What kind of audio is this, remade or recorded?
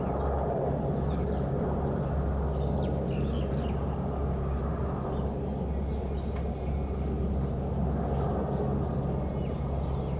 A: recorded